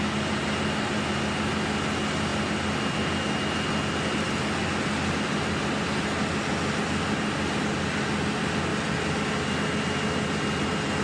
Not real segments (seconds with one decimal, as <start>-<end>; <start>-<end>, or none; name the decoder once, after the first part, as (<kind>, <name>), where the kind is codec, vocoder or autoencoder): none